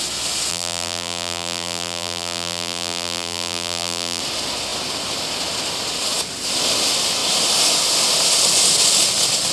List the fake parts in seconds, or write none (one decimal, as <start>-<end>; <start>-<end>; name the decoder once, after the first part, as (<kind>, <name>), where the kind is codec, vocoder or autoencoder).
0.5-4.2 (vocoder, BigVGAN v2)